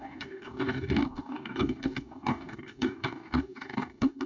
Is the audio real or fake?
fake